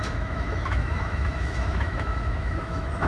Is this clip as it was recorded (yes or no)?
no